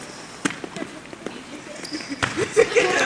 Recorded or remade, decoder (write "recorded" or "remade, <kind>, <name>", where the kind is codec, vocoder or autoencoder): recorded